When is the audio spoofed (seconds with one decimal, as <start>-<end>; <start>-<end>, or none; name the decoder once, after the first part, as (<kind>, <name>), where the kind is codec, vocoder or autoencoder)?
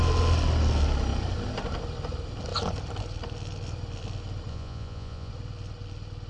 4.5-5.3 (vocoder, Vocos)